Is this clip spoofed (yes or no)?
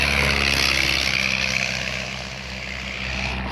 no